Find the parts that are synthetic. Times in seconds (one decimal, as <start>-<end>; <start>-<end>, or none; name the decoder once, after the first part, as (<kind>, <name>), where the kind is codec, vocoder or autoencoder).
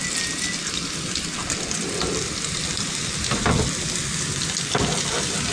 none